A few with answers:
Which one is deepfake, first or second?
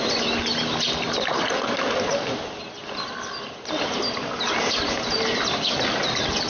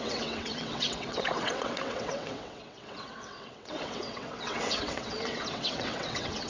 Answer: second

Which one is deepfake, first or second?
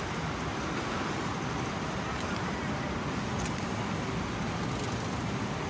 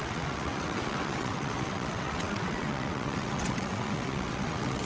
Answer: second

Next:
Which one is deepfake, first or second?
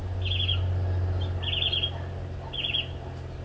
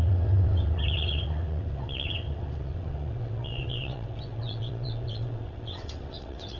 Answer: second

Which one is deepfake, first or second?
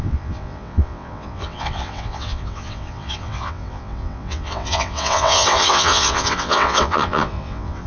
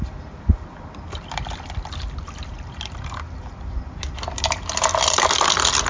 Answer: first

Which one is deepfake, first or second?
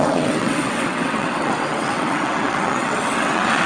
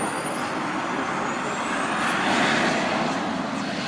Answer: first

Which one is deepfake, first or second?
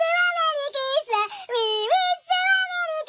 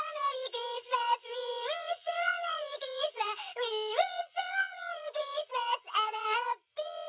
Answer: second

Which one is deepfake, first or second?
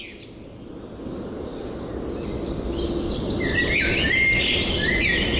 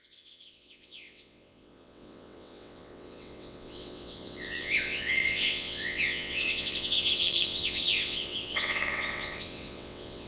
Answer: second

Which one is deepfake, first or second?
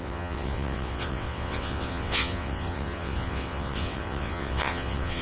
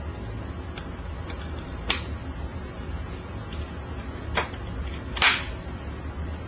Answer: first